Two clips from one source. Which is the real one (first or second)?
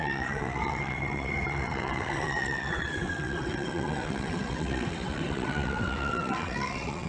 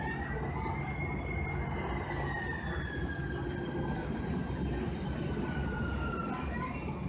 second